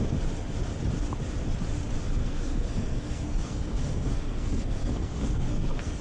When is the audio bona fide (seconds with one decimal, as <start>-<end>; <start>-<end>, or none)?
0.0-2.2